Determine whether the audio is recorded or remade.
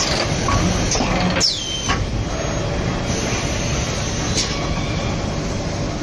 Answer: recorded